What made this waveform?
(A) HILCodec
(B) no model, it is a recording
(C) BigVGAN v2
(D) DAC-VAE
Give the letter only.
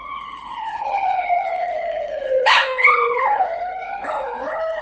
A